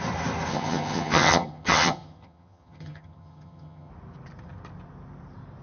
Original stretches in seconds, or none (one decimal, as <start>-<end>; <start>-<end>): 0.0-0.5; 3.9-5.6